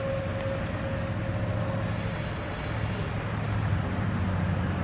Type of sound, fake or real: real